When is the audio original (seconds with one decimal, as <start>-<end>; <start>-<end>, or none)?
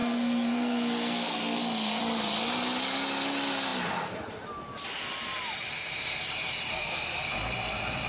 2.0-6.7; 7.3-8.1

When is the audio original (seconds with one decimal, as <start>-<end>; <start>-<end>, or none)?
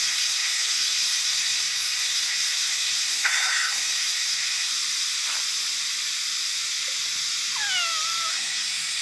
4.7-8.3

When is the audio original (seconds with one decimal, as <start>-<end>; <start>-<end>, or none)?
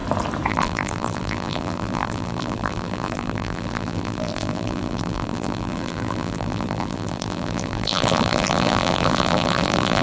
0.0-0.5